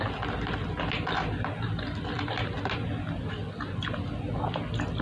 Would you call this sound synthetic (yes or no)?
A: no